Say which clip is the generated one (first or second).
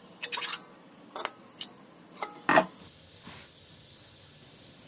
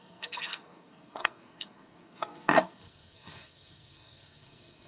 second